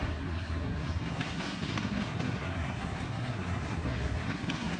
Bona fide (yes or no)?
no